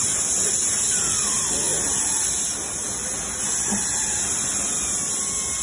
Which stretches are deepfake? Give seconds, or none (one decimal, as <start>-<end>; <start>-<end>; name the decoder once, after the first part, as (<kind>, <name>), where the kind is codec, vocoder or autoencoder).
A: none